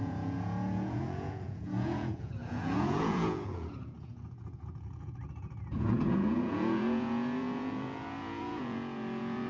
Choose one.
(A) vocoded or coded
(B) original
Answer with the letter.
A